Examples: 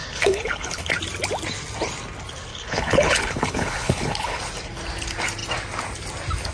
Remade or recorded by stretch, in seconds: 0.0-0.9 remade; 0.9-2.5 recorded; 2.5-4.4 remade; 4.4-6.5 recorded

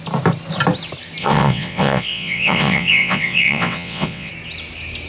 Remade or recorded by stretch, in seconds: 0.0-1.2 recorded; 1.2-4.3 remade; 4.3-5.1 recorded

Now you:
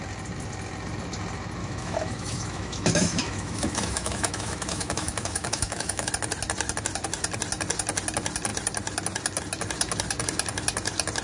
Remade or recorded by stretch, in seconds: 0.0-1.6 recorded; 1.6-6.1 remade; 6.1-11.2 recorded

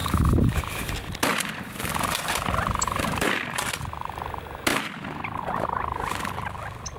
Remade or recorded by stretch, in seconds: 0.0-0.9 remade; 0.9-1.3 recorded; 1.3-3.6 remade; 3.6-4.7 recorded; 4.7-6.6 remade; 6.6-7.0 recorded

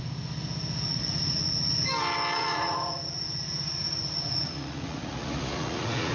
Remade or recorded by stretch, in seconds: 0.0-0.9 recorded; 0.9-1.7 remade; 1.7-2.4 recorded; 2.4-6.1 remade

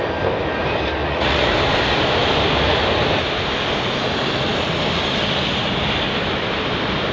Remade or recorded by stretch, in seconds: 0.0-1.0 recorded; 1.0-1.5 remade; 1.5-7.1 recorded

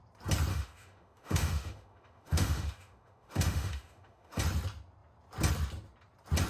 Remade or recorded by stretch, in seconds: 0.0-0.5 recorded; 0.5-4.4 remade; 4.4-6.5 recorded